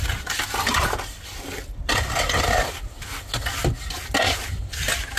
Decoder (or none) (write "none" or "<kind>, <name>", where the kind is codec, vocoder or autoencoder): none